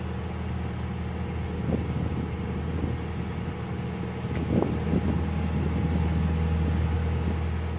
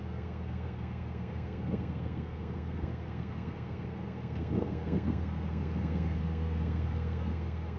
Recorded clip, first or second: first